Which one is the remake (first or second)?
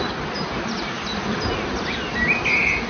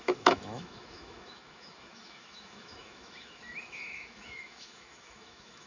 second